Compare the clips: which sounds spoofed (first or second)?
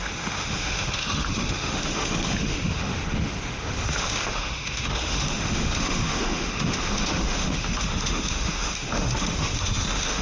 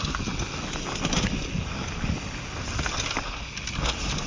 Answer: first